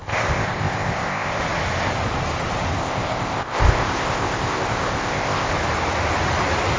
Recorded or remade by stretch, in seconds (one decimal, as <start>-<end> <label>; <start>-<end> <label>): 0.0-1.4 remade; 1.4-2.8 recorded; 2.8-5.5 remade; 5.5-6.8 recorded